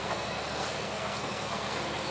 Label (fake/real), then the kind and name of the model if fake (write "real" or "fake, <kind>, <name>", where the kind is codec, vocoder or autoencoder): fake, codec, SNAC